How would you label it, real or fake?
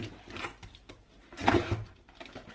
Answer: real